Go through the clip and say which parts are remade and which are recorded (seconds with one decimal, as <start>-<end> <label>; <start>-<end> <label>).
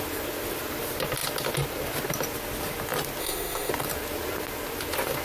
0.0-3.2 recorded; 3.2-3.7 remade; 3.7-5.2 recorded